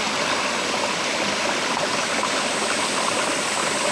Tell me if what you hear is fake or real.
real